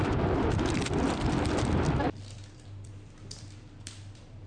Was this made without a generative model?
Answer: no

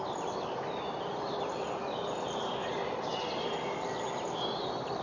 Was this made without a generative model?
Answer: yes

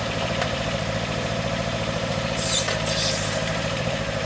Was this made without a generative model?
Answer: no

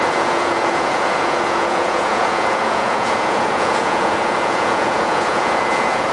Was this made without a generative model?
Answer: no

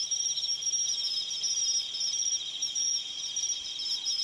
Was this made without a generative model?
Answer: yes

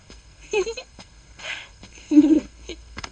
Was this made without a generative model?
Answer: no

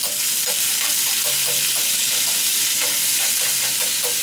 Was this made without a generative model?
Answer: yes